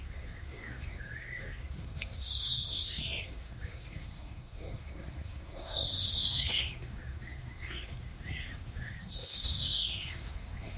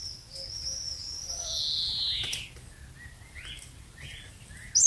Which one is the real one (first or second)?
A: second